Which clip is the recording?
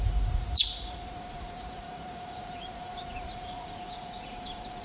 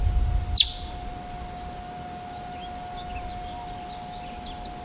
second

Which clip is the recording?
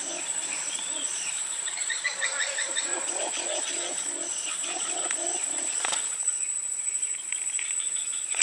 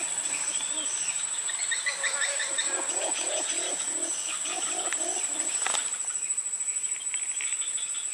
second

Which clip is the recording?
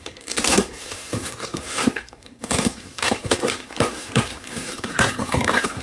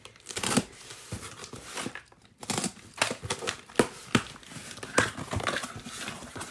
second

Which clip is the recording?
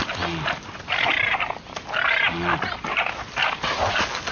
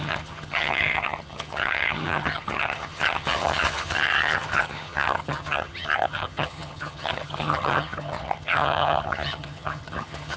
first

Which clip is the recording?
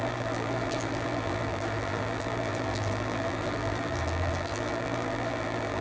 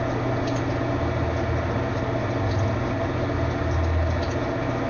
second